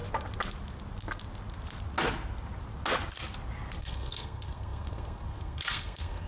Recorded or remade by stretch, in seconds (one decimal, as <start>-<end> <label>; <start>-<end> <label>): 0.0-3.8 recorded; 3.8-6.3 remade